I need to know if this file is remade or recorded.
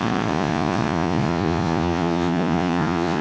remade